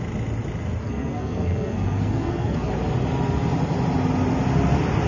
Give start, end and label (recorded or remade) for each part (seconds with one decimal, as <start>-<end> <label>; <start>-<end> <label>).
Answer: 0.0-0.8 recorded; 0.8-2.7 remade; 2.7-5.1 recorded